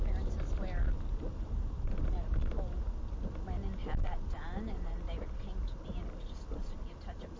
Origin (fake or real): real